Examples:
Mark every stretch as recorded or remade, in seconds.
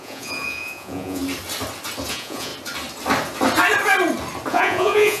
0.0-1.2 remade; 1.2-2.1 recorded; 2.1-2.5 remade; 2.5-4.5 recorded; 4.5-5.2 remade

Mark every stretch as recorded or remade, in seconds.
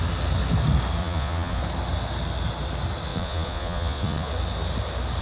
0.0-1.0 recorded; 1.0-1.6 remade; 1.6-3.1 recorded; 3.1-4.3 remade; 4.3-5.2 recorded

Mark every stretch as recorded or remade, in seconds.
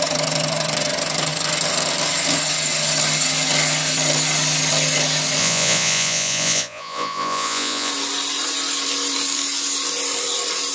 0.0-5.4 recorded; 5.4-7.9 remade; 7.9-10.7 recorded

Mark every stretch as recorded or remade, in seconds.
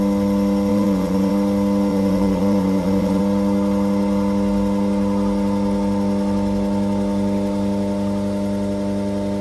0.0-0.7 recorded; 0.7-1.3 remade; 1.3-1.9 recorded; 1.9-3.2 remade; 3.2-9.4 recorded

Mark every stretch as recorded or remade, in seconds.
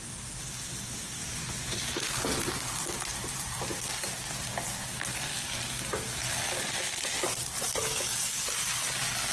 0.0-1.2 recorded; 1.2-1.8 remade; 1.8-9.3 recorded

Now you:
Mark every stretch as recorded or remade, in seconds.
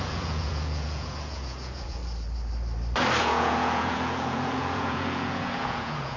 0.0-2.0 remade; 2.0-3.2 recorded; 3.2-6.2 remade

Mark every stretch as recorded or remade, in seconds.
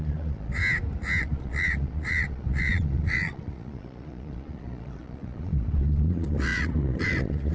0.0-0.6 remade; 0.6-1.2 recorded; 1.2-7.5 remade